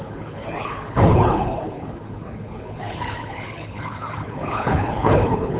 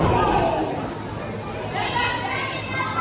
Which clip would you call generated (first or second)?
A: first